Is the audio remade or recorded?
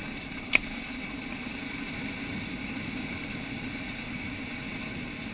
recorded